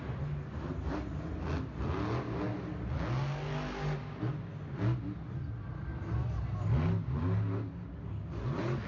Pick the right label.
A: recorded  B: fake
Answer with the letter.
A